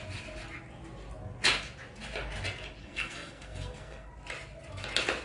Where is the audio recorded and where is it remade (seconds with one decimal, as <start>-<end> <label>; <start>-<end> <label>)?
0.0-2.8 recorded; 2.8-4.1 remade; 4.1-5.2 recorded